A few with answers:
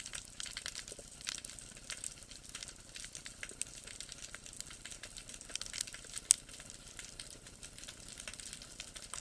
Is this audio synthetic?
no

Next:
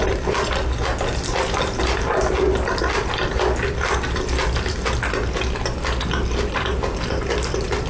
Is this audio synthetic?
no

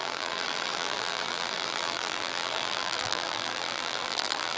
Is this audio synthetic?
yes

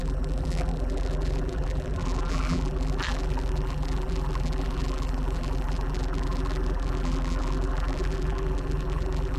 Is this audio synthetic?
yes